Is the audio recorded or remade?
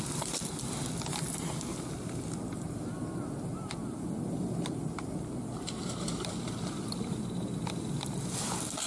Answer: recorded